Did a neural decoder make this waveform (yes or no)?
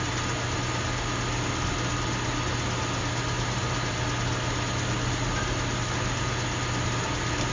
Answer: no